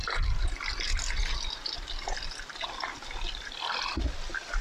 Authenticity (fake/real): real